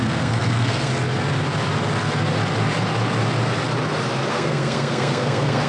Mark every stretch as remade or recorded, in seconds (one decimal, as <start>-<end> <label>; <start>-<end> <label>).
0.0-0.9 remade; 0.9-4.3 recorded; 4.3-5.7 remade

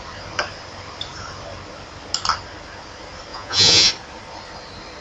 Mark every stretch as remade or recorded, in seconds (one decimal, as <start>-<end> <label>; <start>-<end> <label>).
0.0-3.3 recorded; 3.3-3.9 remade; 3.9-5.0 recorded

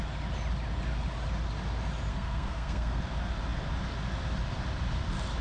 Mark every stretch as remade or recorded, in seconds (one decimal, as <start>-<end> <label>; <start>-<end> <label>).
0.0-2.1 recorded; 2.1-3.0 remade; 3.0-5.4 recorded

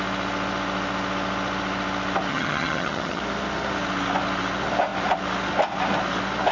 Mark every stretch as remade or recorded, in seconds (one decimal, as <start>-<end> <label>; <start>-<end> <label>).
0.0-2.3 recorded; 2.3-3.2 remade; 3.2-6.5 recorded